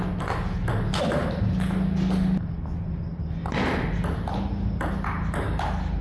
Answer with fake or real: real